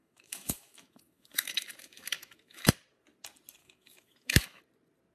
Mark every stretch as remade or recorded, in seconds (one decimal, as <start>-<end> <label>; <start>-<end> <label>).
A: 0.0-2.7 remade; 2.7-3.6 recorded; 3.6-4.6 remade; 4.6-5.1 recorded